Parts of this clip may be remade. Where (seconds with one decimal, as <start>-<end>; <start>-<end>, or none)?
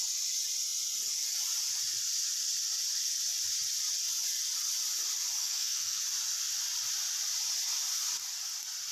5.4-6.0